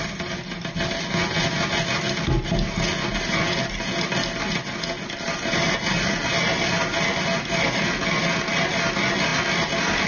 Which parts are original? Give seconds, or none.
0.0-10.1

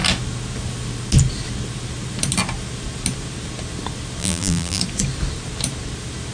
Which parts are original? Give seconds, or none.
0.0-4.2; 4.8-6.3

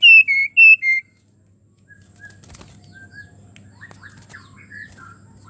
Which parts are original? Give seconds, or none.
0.0-5.5

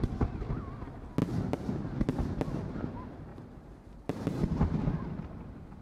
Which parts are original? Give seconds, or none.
0.0-3.3; 4.8-5.8

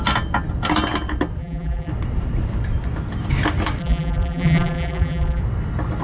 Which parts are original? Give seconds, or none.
0.0-1.4; 1.9-3.8; 5.4-6.0

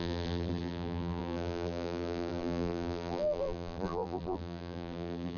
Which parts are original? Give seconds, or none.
none

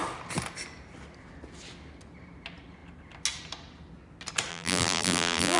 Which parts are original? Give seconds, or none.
0.0-4.5

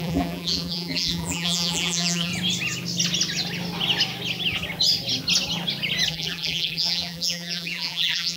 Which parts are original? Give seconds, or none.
2.3-6.1